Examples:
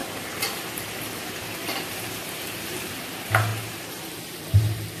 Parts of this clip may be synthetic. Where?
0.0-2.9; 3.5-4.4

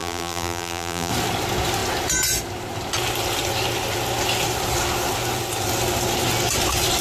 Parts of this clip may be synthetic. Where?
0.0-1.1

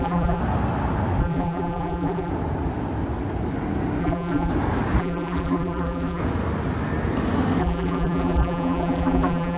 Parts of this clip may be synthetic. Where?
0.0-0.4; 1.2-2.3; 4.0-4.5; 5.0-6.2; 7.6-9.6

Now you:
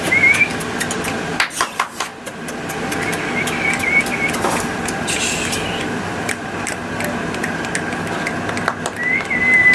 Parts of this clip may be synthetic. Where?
4.1-7.7

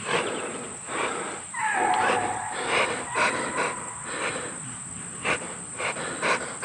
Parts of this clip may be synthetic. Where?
1.6-3.5

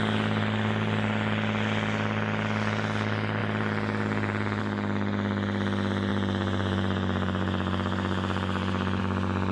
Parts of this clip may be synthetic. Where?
3.4-4.6; 6.1-9.0

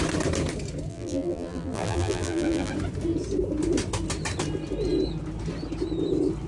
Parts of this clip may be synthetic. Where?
0.9-2.7

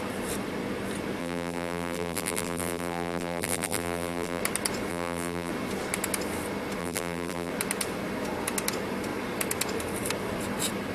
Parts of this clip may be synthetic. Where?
1.2-4.4; 4.9-5.5; 6.8-7.5